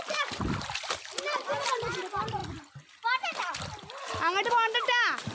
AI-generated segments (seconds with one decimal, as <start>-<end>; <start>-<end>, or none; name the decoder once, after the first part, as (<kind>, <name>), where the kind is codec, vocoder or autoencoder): none